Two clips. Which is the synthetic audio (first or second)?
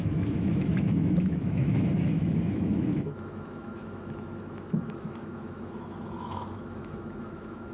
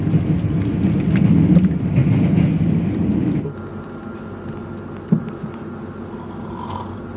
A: first